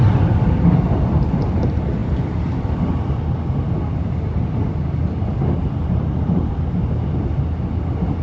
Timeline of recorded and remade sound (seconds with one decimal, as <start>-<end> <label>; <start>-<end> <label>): 0.0-8.2 recorded